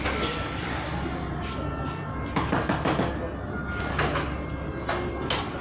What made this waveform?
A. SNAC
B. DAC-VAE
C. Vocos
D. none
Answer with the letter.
D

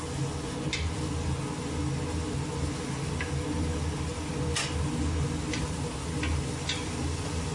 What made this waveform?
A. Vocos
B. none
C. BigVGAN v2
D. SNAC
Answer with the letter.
B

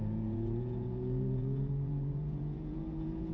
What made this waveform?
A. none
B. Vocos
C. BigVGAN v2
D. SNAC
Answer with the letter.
B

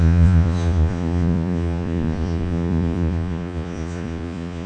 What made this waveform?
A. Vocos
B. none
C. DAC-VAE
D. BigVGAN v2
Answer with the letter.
A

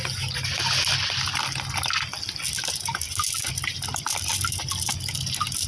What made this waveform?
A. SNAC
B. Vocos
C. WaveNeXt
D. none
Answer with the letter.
D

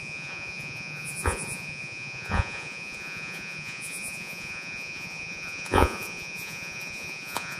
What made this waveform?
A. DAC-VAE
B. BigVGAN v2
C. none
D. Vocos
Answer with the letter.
D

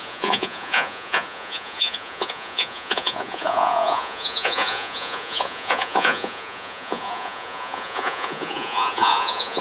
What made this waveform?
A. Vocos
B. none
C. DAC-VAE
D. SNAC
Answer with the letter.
A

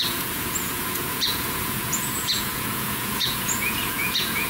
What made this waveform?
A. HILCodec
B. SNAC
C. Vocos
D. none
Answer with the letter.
C